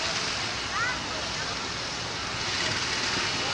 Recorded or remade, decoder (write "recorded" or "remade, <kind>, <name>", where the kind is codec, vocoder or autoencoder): recorded